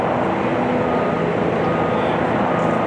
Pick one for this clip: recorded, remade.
recorded